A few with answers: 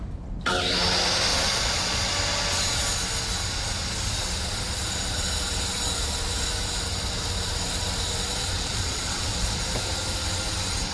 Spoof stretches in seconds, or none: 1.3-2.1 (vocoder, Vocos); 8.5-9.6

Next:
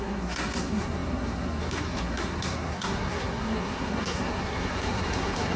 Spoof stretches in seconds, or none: 0.0-5.6 (codec, SNAC)

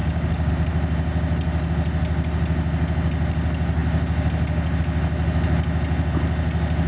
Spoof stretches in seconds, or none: 0.0-0.5 (codec, DAC)

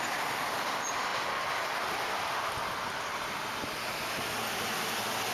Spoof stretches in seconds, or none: none

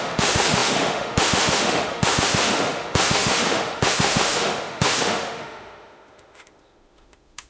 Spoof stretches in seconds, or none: 0.0-7.5 (autoencoder, DAC-VAE)

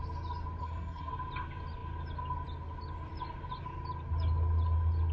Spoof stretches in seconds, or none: 0.6-1.1 (codec, SNAC)

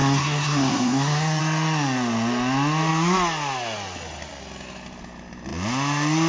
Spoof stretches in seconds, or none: 0.0-1.4 (codec, SNAC)